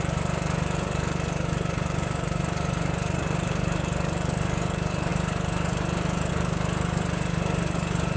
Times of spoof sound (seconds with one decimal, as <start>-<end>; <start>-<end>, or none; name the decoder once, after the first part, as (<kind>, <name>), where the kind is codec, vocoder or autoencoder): 0.0-8.2 (codec, DAC)